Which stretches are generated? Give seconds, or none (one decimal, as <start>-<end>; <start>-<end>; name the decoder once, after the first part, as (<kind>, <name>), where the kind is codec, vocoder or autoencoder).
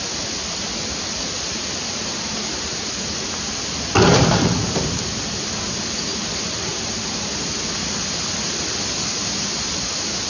none